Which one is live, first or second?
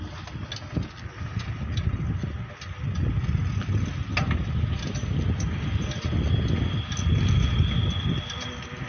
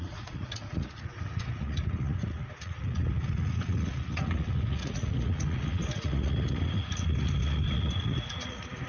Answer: first